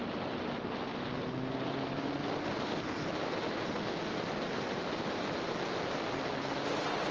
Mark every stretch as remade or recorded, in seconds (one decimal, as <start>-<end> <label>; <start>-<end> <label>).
0.0-7.1 recorded

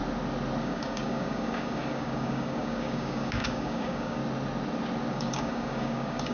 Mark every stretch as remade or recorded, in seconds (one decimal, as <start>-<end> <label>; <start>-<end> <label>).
0.0-0.6 recorded; 0.6-4.2 remade; 4.2-5.1 recorded; 5.1-6.3 remade

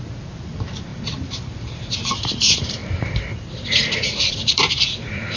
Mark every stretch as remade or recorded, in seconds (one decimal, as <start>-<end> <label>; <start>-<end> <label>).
0.0-5.4 remade